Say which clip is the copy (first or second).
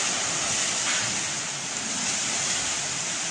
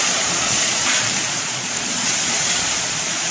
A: second